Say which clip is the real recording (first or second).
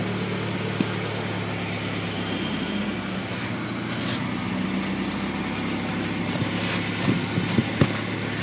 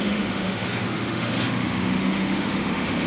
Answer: first